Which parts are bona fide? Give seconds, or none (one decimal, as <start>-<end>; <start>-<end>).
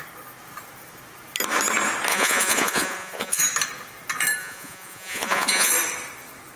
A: 0.0-2.1; 3.4-4.4; 5.7-6.6